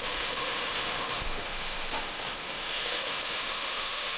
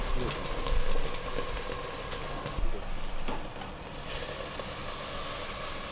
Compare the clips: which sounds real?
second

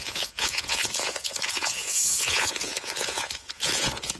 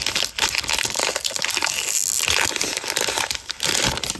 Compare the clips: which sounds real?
second